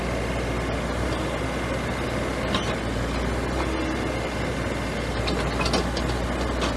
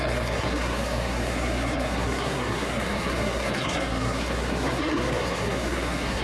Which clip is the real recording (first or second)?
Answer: first